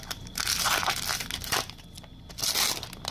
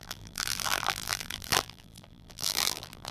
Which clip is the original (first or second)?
first